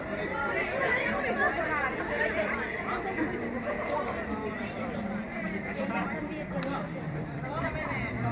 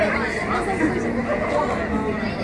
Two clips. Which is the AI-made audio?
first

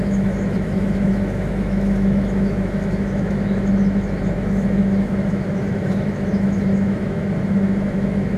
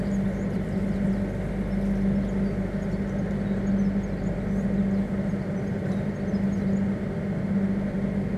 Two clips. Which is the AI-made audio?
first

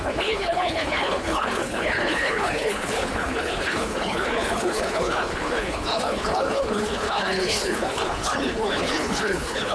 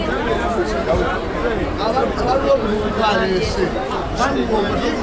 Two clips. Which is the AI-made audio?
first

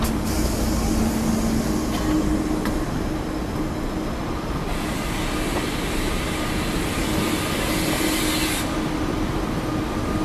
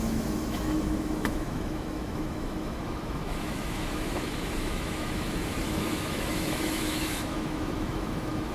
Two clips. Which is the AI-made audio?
second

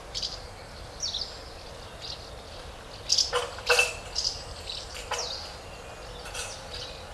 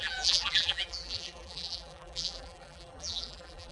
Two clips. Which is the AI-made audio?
second